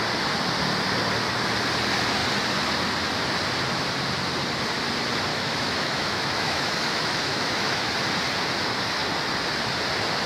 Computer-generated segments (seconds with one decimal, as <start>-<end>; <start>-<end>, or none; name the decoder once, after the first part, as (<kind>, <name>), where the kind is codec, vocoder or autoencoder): 5.3-7.9 (autoencoder, DAC-VAE)